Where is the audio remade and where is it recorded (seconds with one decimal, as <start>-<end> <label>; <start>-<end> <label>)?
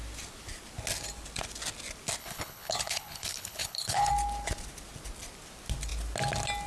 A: 0.0-2.2 recorded; 2.2-4.1 remade; 4.1-6.7 recorded